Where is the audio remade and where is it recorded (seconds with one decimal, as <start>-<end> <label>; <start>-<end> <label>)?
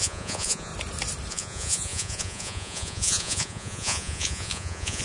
0.0-0.7 remade; 0.7-1.3 recorded; 1.3-5.0 remade